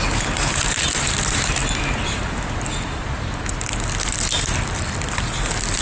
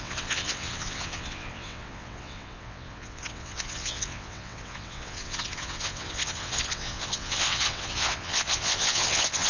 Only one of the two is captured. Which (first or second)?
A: first